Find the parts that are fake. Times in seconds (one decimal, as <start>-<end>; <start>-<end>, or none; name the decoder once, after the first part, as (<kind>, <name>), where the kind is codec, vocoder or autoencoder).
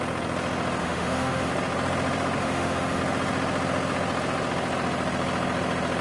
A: 0.8-1.5 (autoencoder, DAC-VAE); 2.4-3.0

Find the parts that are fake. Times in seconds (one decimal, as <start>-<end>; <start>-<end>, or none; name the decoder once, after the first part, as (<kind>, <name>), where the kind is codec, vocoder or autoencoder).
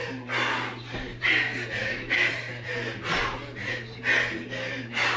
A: 1.8-2.3 (autoencoder, DAC-VAE)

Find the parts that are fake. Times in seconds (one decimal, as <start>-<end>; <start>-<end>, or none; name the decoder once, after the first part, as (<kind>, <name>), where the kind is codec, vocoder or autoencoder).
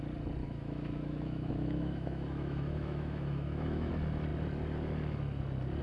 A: 0.4-3.9 (autoencoder, DAC-VAE)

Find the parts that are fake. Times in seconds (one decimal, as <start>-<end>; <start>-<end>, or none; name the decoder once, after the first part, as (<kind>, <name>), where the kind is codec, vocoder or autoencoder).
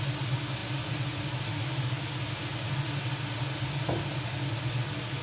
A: none